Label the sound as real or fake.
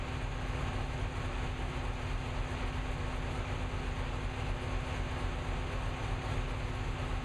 real